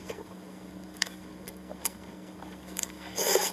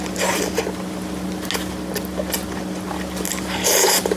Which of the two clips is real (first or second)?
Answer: second